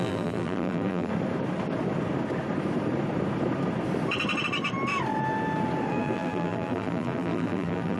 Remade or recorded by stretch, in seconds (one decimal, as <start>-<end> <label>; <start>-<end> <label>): 0.0-1.1 remade; 1.1-5.9 recorded; 5.9-8.0 remade